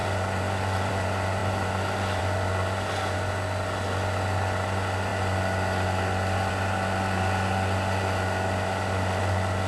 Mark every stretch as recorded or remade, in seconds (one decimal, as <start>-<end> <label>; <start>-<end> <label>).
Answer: 0.0-9.7 recorded